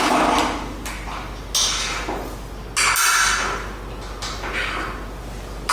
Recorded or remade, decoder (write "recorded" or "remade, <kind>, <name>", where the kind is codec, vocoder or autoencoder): recorded